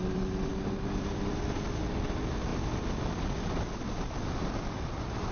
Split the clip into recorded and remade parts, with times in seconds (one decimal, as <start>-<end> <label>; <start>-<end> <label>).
0.0-5.3 recorded